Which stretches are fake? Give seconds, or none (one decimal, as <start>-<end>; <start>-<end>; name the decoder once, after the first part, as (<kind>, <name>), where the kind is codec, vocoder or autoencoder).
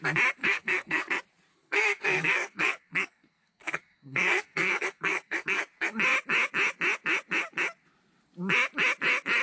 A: 0.4-1.1 (codec, SNAC); 1.5-5.6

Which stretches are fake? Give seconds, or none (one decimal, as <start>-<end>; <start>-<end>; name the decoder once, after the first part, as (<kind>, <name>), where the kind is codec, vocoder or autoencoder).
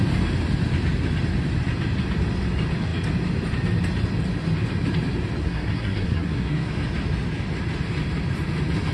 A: 5.4-6.7 (codec, SNAC)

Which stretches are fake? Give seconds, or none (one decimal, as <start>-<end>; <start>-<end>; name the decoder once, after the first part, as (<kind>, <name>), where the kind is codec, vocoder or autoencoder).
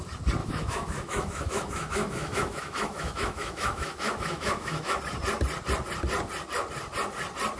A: 0.4-5.0 (autoencoder, DAC-VAE)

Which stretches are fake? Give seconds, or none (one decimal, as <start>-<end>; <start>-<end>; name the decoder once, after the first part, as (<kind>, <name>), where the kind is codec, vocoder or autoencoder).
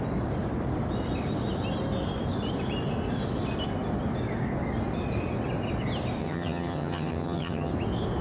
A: 6.2-7.7 (vocoder, HiFi-GAN)